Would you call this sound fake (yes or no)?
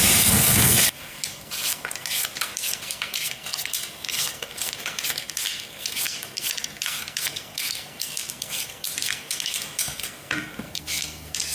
yes